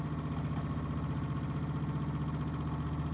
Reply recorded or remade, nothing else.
recorded